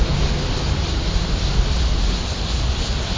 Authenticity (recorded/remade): recorded